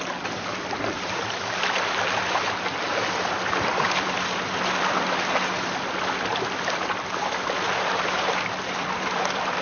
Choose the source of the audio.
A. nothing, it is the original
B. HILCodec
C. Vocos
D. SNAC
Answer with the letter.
A